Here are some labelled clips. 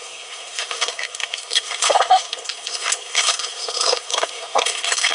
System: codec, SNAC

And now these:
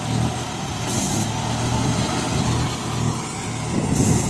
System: none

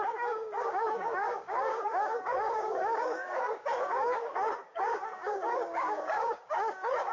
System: codec, DAC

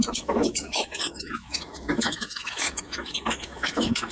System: autoencoder, DAC-VAE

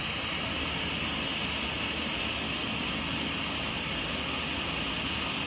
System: none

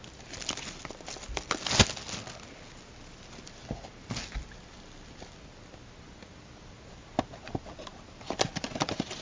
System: none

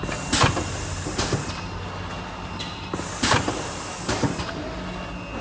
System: none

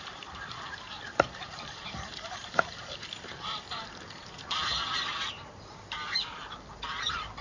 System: vocoder, BigVGAN v2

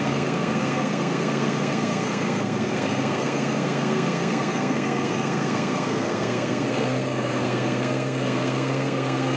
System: codec, SNAC